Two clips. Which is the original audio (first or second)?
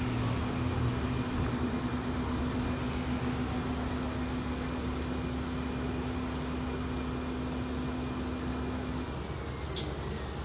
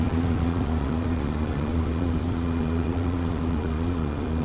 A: first